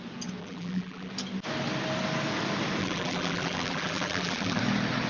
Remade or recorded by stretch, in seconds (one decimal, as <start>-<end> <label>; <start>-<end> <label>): 0.0-0.4 recorded; 0.4-1.1 remade; 1.1-2.8 recorded; 2.8-4.6 remade; 4.6-5.1 recorded